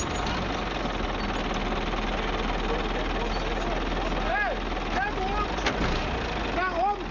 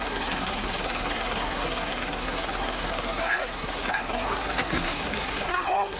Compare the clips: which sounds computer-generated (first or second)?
second